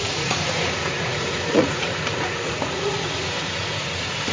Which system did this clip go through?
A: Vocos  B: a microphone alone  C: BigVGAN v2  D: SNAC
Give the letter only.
A